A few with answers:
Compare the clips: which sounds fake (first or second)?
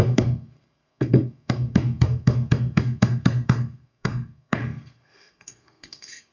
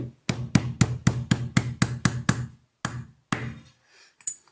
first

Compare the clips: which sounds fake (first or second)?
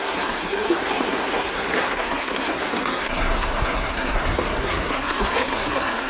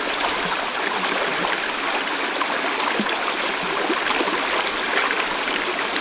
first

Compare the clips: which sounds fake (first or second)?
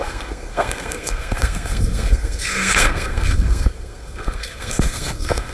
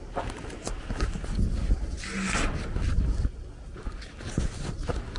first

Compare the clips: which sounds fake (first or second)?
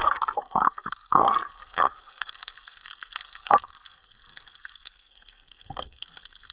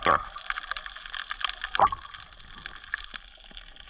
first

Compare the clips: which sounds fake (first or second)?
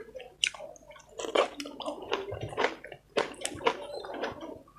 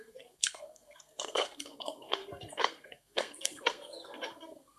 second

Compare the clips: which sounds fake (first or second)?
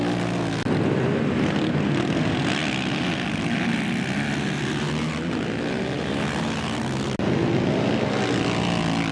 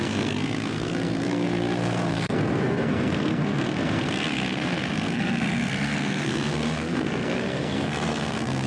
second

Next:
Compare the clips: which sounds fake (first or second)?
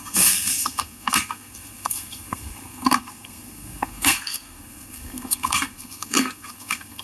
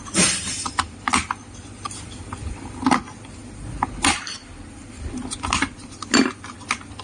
first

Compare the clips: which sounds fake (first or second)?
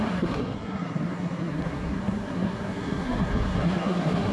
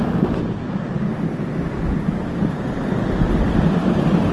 first